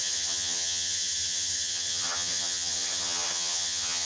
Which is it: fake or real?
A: fake